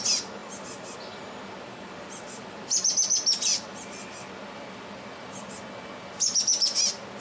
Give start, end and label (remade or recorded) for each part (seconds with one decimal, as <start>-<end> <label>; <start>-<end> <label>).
0.0-7.2 recorded